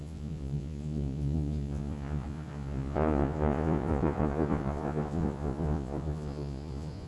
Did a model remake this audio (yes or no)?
yes